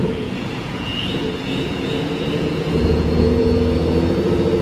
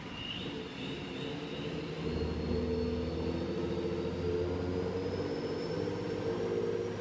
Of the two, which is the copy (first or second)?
first